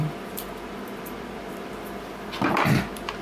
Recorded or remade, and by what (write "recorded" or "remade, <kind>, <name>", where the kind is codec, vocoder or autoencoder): remade, vocoder, BigVGAN v2